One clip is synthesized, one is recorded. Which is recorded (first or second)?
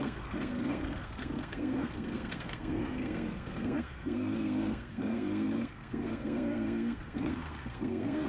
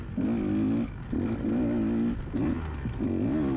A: second